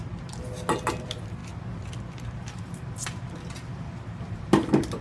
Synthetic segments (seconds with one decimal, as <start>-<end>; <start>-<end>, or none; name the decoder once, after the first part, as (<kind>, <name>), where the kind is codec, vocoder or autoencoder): none